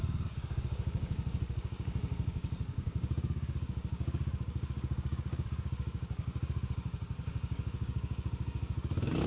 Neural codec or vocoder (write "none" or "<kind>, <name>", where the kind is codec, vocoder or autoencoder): codec, DAC